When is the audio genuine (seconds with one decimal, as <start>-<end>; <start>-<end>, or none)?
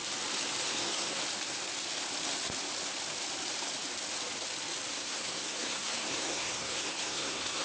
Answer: 0.0-0.7; 1.2-4.9